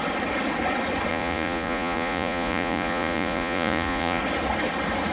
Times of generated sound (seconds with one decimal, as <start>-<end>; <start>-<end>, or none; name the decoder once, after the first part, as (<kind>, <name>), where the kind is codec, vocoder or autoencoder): 1.1-4.2 (vocoder, Vocos)